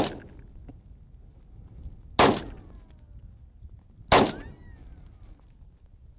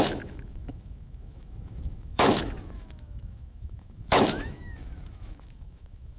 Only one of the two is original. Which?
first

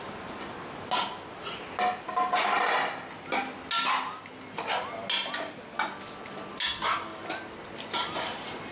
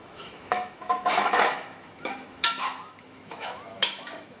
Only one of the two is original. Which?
first